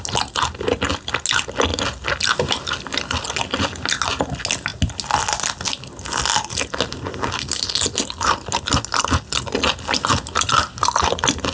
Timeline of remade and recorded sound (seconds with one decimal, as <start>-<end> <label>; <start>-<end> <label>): 0.0-11.5 recorded